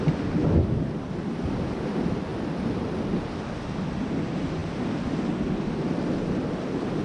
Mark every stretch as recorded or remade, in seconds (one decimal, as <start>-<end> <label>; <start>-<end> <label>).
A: 0.0-0.4 recorded; 0.4-1.5 remade; 1.5-7.0 recorded